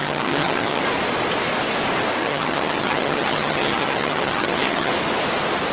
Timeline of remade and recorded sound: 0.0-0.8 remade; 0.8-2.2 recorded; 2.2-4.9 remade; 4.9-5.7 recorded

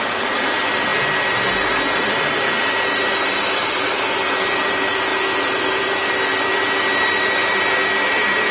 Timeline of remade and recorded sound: 0.0-8.5 remade

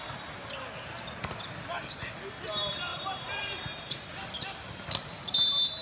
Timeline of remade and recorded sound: 0.0-2.9 recorded; 2.9-4.1 remade; 4.1-5.8 recorded

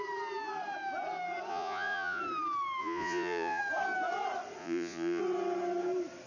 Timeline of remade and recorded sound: 0.0-1.5 recorded; 1.5-2.2 remade; 2.2-2.8 recorded; 2.8-3.6 remade; 3.6-4.6 recorded; 4.6-5.2 remade; 5.2-6.3 recorded